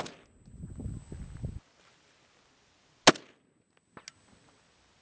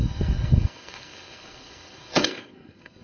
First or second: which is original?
first